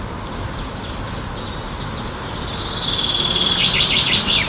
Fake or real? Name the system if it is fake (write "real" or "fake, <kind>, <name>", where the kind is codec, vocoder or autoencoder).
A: real